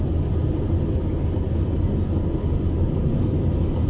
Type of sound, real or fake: real